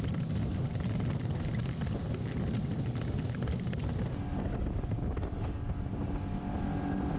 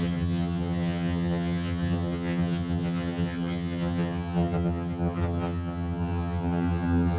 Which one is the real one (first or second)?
first